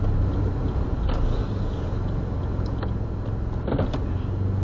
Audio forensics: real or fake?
real